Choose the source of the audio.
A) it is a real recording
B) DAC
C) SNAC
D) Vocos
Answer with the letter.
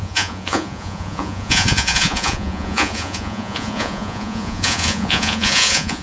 D